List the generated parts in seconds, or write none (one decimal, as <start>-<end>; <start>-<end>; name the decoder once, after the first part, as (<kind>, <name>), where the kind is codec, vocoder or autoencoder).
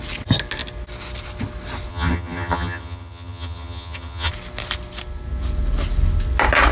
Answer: 1.9-4.3 (vocoder, HiFi-GAN)